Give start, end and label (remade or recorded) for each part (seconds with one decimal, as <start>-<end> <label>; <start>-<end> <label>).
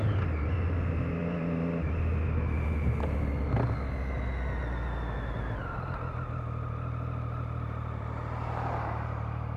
0.0-9.6 recorded